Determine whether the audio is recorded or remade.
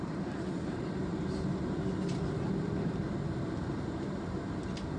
remade